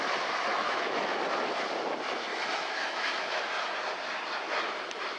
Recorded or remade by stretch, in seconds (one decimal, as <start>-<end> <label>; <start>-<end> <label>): 0.0-0.5 recorded; 0.5-1.2 remade; 1.2-2.3 recorded; 2.3-3.4 remade; 3.4-5.2 recorded